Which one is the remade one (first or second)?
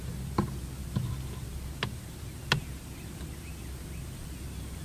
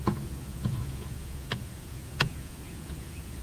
second